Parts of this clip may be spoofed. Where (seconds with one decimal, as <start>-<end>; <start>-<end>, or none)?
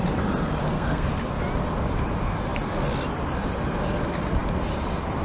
0.6-1.1